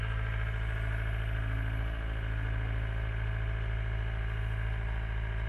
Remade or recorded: recorded